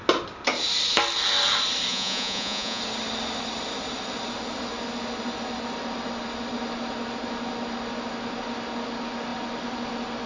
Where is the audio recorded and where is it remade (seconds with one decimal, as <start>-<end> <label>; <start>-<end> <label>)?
0.0-1.9 recorded; 1.9-2.8 remade; 2.8-10.3 recorded